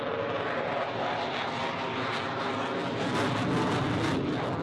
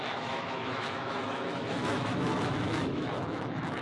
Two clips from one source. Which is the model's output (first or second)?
second